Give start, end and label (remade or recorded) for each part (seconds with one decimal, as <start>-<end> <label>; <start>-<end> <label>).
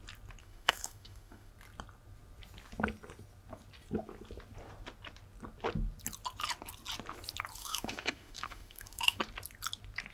0.0-0.4 recorded; 0.4-1.5 remade; 1.5-7.6 recorded; 7.6-9.2 remade; 9.2-10.1 recorded